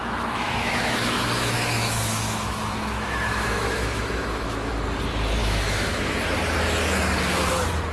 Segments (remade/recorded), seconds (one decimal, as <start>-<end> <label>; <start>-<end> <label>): 0.0-4.7 remade; 4.7-5.4 recorded; 5.4-6.2 remade; 6.2-7.9 recorded